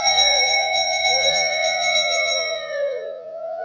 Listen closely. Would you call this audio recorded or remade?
remade